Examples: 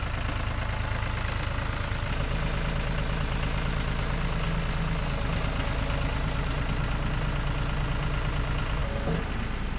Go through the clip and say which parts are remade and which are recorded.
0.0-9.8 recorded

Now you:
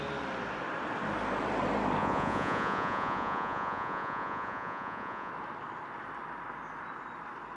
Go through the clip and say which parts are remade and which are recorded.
0.0-2.0 recorded; 2.0-5.3 remade; 5.3-7.6 recorded

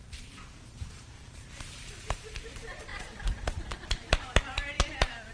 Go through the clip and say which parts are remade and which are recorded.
0.0-5.3 remade

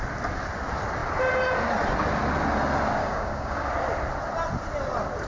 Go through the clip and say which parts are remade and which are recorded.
0.0-3.0 recorded; 3.0-3.7 remade; 3.7-5.3 recorded